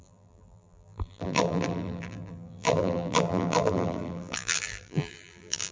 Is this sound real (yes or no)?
no